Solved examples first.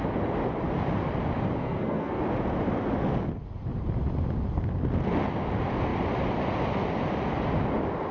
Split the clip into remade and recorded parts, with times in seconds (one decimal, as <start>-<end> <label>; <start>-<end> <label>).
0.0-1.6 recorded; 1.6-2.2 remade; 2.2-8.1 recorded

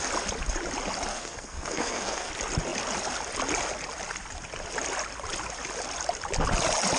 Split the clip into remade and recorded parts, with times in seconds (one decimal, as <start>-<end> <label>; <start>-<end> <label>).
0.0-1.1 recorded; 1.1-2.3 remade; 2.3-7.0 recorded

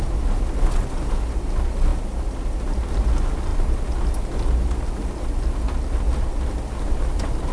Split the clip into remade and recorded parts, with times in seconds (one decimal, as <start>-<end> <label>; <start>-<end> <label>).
0.0-7.5 recorded

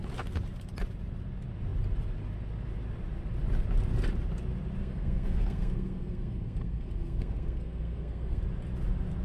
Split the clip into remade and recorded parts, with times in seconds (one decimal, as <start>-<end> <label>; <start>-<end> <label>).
0.0-4.8 recorded; 4.8-8.4 remade; 8.4-9.2 recorded